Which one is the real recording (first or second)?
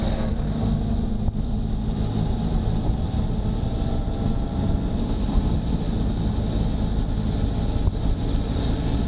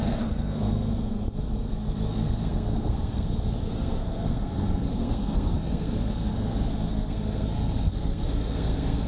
first